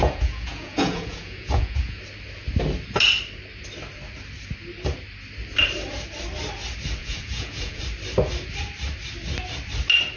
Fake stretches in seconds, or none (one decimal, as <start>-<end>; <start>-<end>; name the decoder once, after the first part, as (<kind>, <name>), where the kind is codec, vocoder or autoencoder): 0.0-2.0 (vocoder, Vocos); 7.0-7.8